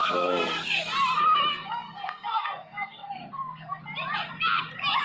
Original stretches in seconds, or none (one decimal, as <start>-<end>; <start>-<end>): 0.9-1.5; 3.8-5.0